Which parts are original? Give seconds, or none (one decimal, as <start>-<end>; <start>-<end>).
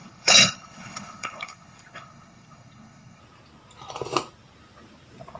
3.2-5.4